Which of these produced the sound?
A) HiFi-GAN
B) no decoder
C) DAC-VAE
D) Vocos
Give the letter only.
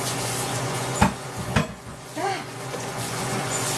D